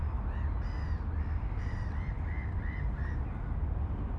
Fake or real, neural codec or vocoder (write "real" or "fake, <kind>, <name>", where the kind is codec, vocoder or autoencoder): real